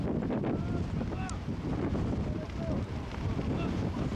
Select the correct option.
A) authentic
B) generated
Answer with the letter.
A